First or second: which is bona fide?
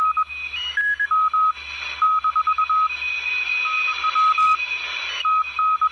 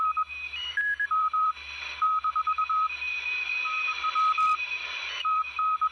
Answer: first